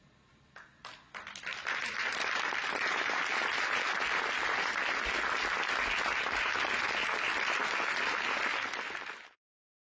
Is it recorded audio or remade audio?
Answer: recorded